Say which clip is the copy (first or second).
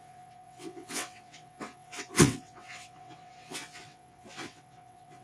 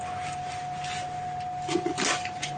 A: first